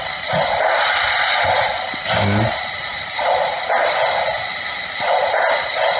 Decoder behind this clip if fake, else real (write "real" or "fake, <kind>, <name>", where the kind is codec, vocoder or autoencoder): real